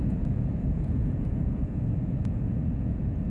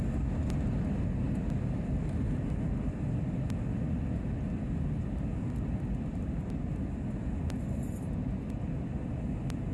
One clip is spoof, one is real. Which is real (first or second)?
second